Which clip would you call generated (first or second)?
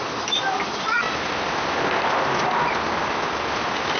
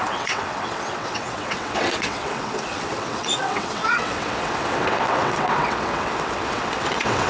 second